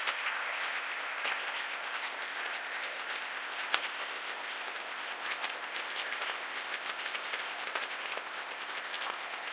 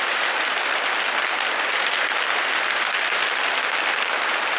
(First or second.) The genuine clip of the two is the second